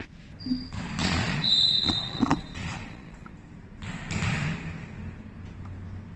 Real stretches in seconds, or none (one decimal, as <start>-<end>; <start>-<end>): 0.0-1.0; 3.3-6.2